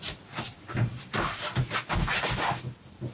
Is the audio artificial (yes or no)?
no